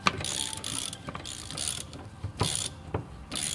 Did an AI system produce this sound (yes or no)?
no